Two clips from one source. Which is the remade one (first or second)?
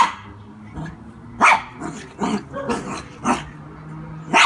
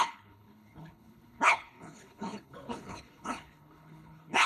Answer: second